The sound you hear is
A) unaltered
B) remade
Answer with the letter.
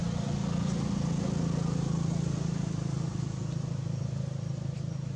A